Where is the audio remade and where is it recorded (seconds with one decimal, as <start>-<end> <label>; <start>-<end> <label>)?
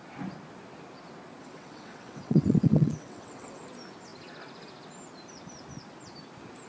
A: 0.0-1.4 recorded; 1.4-3.6 remade; 3.6-6.7 recorded